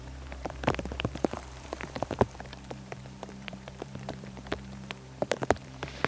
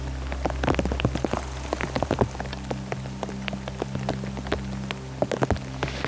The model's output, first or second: first